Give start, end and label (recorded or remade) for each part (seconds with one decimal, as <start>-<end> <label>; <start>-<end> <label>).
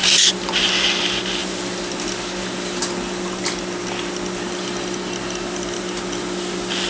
0.0-6.9 recorded